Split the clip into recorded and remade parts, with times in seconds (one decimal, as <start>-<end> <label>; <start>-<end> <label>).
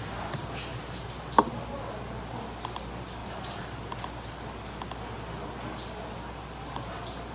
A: 0.0-3.2 recorded; 3.2-3.8 remade; 3.8-7.3 recorded